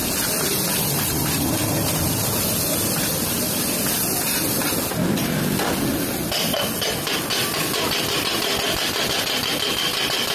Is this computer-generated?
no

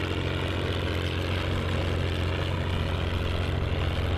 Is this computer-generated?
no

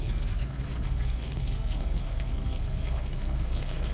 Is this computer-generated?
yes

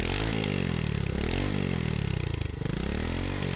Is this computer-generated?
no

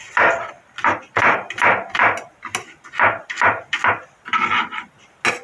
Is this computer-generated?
no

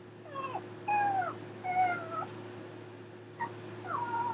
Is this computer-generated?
no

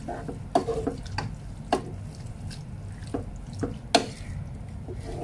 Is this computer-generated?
no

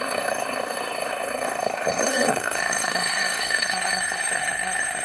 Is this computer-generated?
yes